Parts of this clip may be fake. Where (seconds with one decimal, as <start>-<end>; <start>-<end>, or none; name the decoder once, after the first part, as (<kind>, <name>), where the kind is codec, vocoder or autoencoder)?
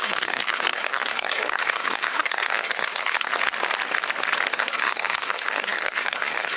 0.0-3.3 (codec, SNAC); 4.5-6.6